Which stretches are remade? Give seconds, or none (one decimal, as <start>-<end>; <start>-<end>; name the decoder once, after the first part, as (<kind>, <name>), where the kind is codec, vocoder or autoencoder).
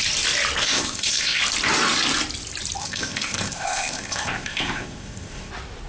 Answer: 0.6-1.4 (codec, ZipCodec); 2.8-5.5